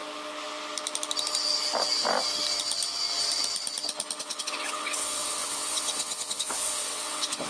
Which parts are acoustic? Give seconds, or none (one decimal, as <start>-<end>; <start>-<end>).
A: 0.0-4.2

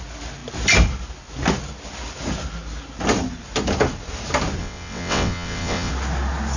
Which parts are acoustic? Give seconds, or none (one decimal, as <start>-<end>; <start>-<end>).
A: 0.0-4.6; 5.9-6.6

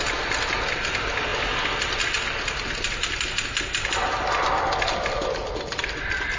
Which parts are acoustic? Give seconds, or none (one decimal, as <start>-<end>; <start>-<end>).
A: 0.0-6.4

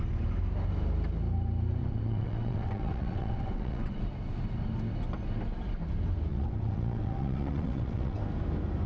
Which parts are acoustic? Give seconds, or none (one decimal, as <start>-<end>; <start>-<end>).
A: 0.0-1.8; 4.0-6.3; 8.2-8.9

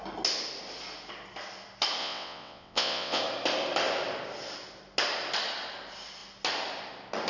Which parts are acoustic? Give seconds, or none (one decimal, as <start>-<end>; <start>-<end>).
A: 0.0-2.0; 3.2-7.3

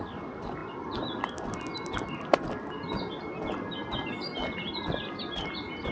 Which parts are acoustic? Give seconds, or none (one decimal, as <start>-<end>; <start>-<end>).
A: 0.0-5.9